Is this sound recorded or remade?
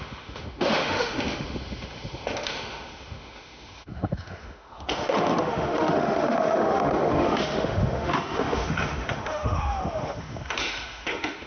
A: remade